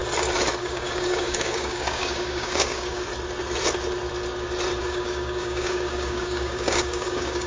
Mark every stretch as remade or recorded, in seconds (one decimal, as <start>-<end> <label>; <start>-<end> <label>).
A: 0.0-0.6 recorded; 0.6-3.1 remade; 3.1-4.8 recorded; 4.8-7.5 remade